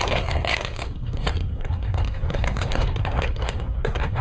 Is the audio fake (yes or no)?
yes